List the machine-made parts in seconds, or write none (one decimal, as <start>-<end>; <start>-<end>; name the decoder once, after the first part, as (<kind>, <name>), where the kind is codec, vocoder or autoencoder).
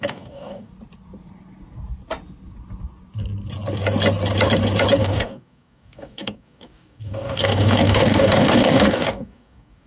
0.0-0.7 (codec, DAC); 5.0-9.9